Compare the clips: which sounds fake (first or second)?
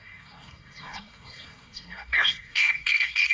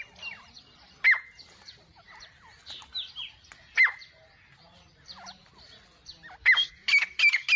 first